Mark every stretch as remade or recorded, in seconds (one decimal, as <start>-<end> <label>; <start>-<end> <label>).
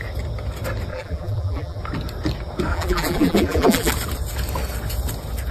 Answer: 0.0-0.9 recorded; 0.9-1.8 remade; 1.8-2.7 recorded; 2.7-3.9 remade; 3.9-5.5 recorded